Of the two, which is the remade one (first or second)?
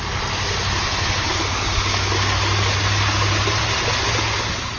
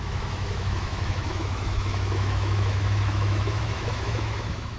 second